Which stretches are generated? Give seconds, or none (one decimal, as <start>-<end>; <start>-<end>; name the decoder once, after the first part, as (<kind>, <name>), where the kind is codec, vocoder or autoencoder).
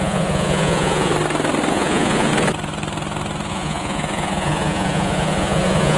0.0-1.1 (vocoder, Vocos); 1.7-2.3; 3.5-6.0